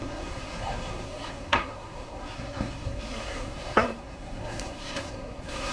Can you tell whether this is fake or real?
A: fake